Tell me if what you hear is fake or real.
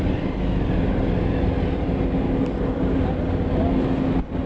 real